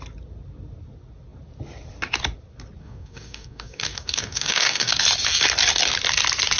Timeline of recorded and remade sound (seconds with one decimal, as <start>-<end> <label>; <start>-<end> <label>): 0.0-2.8 recorded; 2.8-4.9 remade; 4.9-6.6 recorded